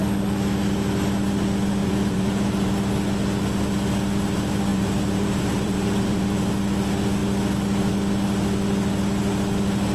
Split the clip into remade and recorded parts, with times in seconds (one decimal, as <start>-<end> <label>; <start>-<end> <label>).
0.0-1.8 recorded; 1.8-2.7 remade; 2.7-4.7 recorded; 4.7-6.5 remade; 6.5-9.9 recorded

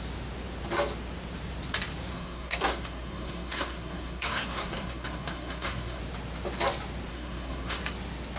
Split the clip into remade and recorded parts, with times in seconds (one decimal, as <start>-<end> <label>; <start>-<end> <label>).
0.0-2.1 recorded; 2.1-6.0 remade; 6.0-7.1 recorded; 7.1-7.8 remade; 7.8-8.4 recorded

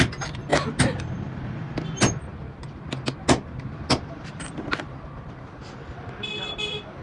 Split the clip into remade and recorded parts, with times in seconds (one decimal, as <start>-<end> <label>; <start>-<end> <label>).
0.0-7.0 recorded

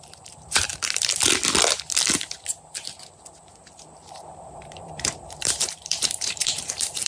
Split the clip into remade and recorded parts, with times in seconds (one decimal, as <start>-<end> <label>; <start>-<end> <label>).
0.0-0.7 remade; 0.7-4.4 recorded; 4.4-7.1 remade

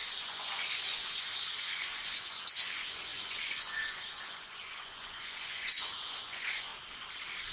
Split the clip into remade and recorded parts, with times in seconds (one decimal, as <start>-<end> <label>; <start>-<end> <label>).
0.0-6.7 remade; 6.7-7.5 recorded

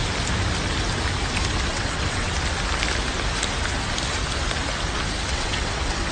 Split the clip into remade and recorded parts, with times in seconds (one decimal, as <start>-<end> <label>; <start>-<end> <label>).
0.0-1.7 recorded; 1.7-2.3 remade; 2.3-5.3 recorded; 5.3-6.1 remade

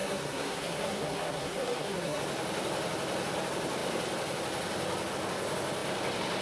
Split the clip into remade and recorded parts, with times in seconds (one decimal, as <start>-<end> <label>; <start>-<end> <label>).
0.0-2.2 remade; 2.2-6.4 recorded